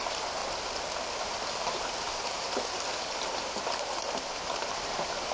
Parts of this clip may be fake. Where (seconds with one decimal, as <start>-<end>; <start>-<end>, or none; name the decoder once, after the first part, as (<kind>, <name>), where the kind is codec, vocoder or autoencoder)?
0.0-0.4 (vocoder, BigVGAN v2); 1.2-5.3